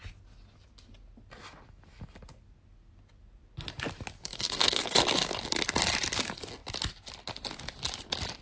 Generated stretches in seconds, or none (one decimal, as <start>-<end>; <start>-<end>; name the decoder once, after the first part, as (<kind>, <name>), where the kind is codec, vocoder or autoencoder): 4.2-5.0 (codec, SNAC)